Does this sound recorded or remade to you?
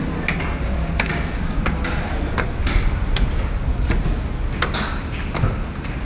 recorded